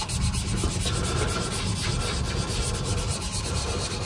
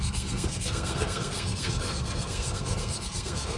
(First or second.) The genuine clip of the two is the first